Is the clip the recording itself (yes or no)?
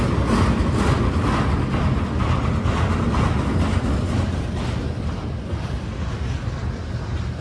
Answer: yes